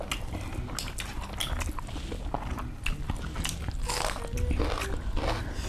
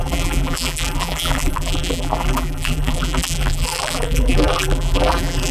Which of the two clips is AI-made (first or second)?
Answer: second